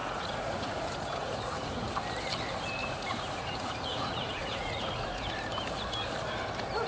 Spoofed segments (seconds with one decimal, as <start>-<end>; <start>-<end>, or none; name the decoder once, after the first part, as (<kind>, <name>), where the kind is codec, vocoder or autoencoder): 0.0-1.9 (vocoder, Vocos); 2.8-5.3